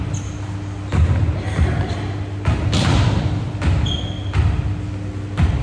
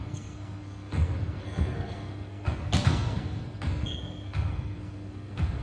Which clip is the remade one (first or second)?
second